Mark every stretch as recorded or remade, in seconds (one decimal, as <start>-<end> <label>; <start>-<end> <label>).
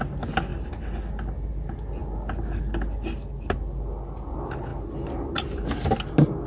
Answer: 0.0-6.5 recorded